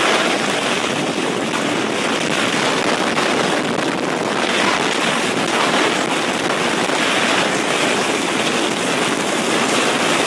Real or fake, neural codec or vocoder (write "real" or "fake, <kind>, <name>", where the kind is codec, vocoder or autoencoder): real